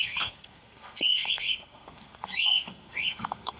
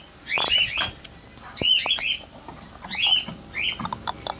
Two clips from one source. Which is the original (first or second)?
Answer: second